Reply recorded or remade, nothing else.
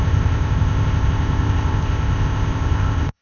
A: remade